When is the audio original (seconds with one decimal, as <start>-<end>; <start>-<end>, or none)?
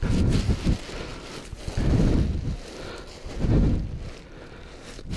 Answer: 0.0-5.2